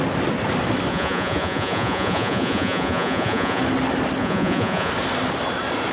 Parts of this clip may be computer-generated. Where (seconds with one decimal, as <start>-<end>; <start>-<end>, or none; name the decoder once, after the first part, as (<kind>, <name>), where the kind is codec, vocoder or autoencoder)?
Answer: 0.9-3.6 (vocoder, Vocos); 4.2-4.9